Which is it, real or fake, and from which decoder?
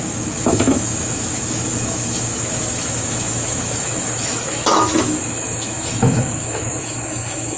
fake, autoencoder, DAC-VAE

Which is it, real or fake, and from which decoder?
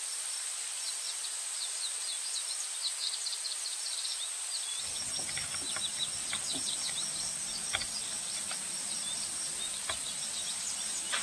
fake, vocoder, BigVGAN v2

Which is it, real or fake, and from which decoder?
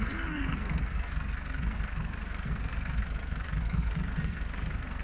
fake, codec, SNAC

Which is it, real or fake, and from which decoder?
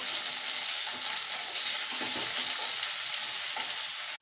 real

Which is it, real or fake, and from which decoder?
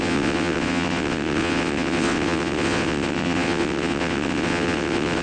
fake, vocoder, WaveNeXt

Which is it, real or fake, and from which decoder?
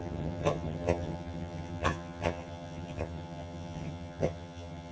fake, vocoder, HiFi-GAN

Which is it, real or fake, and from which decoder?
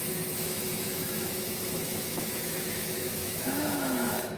fake, autoencoder, DAC-VAE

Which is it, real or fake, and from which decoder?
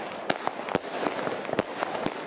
real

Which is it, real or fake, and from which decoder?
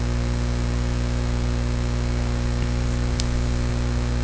real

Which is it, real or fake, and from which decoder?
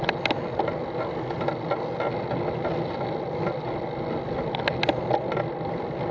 real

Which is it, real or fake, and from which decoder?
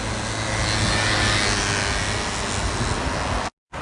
real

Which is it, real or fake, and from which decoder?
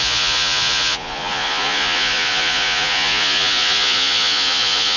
fake, vocoder, Vocos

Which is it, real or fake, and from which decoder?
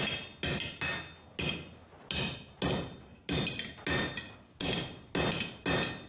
real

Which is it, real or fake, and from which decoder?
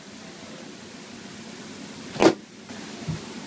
real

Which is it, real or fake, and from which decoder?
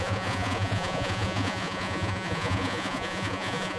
fake, vocoder, Vocos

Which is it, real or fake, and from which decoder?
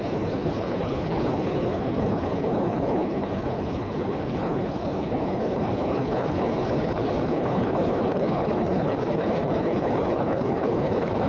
fake, codec, HILCodec